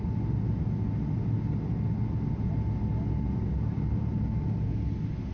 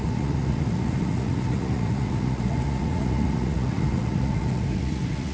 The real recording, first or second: first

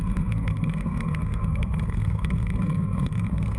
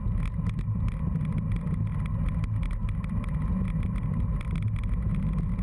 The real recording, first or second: second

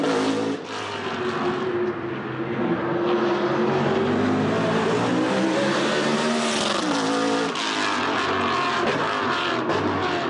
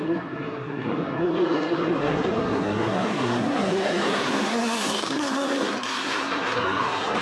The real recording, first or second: first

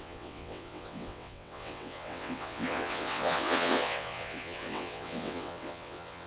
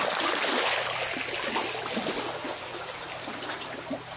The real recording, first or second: second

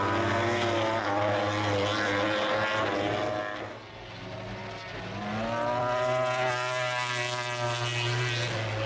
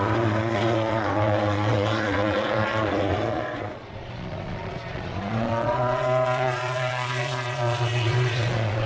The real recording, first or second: first